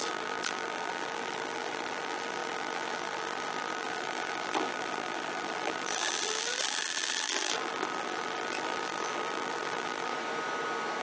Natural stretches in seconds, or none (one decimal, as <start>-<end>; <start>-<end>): 10.1-11.0